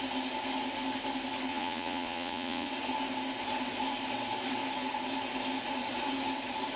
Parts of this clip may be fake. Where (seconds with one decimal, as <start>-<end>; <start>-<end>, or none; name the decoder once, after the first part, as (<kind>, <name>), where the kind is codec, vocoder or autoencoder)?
1.5-2.7 (vocoder, Vocos)